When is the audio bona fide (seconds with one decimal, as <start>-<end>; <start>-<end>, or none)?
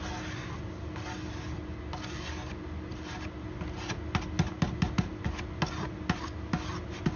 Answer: 0.0-7.2